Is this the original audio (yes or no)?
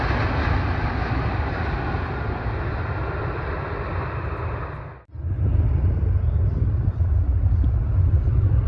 yes